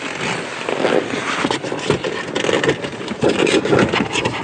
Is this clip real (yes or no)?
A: yes